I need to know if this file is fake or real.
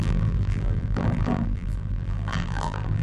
fake